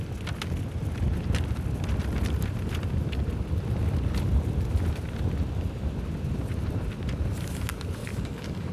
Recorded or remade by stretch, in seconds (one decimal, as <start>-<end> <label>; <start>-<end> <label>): 0.0-8.0 recorded; 8.0-8.7 remade